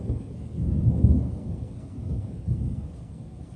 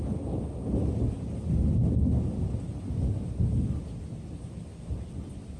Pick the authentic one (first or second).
second